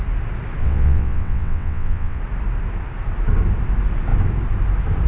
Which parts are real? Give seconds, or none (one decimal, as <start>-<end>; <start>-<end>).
0.0-0.6; 2.2-5.1